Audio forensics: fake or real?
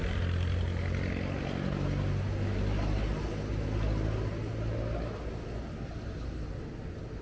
real